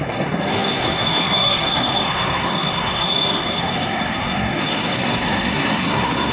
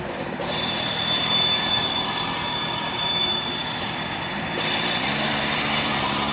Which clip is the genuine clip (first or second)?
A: second